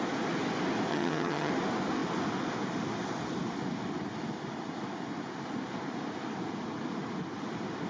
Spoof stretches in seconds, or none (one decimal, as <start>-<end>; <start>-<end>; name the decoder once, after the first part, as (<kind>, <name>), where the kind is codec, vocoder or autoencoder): 0.9-1.5 (vocoder, HiFi-GAN)